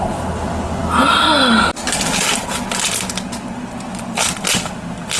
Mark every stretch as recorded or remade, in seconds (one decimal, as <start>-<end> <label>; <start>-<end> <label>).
0.0-5.2 recorded